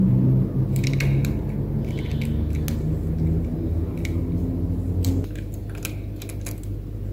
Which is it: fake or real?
real